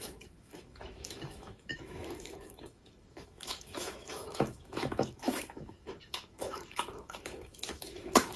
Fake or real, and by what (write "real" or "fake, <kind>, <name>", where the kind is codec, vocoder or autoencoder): fake, autoencoder, DAC-VAE